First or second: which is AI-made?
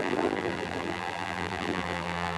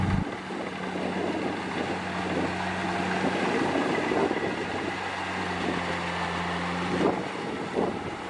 first